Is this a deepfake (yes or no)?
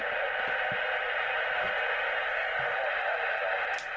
no